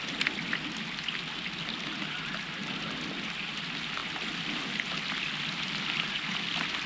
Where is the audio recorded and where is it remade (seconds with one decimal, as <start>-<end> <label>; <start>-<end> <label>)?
0.0-6.9 recorded